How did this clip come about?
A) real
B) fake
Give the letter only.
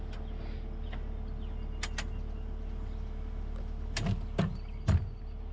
A